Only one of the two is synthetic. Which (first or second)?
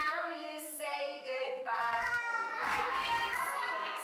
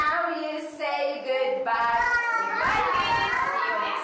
first